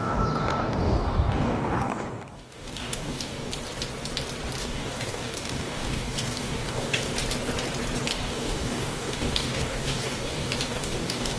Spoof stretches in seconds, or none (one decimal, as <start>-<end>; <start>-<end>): 0.0-3.5; 4.6-7.1; 8.1-11.4